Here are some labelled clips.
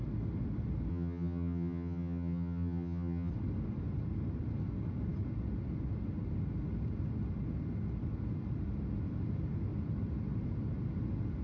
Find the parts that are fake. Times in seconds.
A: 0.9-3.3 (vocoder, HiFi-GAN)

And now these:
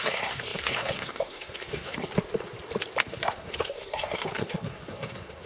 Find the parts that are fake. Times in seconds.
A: 0.0-2.1 (codec, SNAC); 3.0-5.5

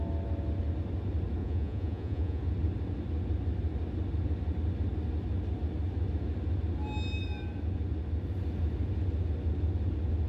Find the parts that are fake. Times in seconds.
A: 1.4-2.4 (vocoder, Vocos)

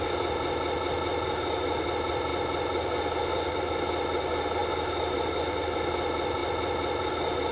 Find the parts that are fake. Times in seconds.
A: none

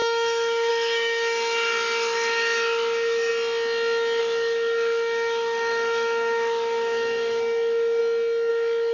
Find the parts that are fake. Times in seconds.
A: 0.0-3.3 (autoencoder, DAC-VAE); 4.2-8.0; 8.5-8.9

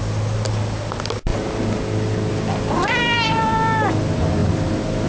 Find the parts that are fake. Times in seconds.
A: none